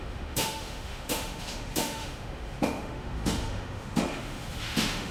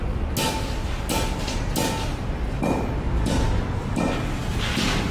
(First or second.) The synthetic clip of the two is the first